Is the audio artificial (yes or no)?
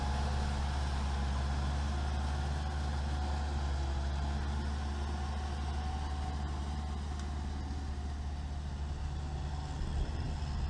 no